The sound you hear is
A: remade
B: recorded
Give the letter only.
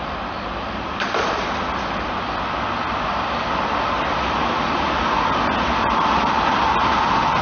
B